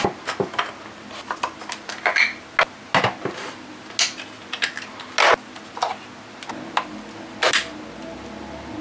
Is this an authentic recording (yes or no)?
yes